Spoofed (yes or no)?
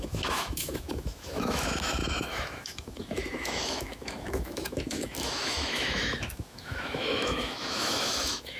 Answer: yes